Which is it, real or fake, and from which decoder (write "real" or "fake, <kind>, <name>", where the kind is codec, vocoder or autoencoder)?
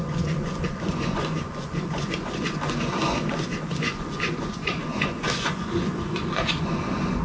fake, vocoder, Vocos